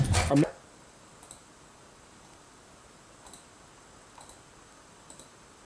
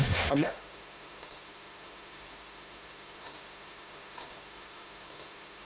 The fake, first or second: second